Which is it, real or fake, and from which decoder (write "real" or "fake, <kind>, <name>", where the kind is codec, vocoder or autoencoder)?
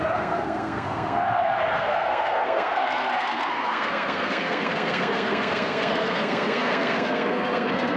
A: fake, codec, SNAC